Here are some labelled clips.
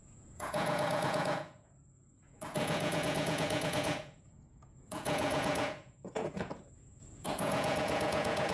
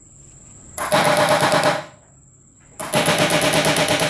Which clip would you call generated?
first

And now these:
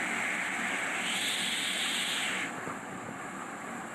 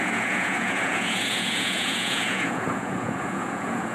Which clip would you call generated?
second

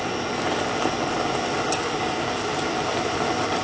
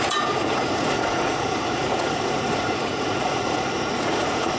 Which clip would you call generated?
second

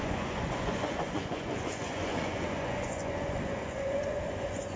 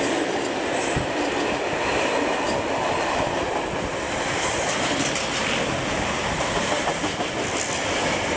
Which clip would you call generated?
first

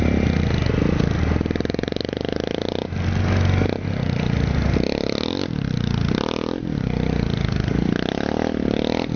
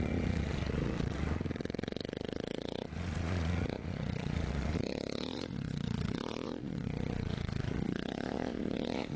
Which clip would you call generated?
second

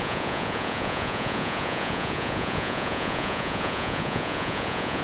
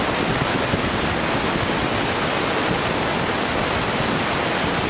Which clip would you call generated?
first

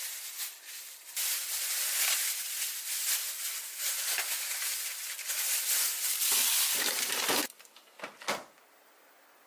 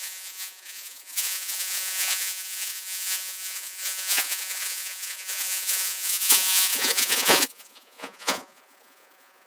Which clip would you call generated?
second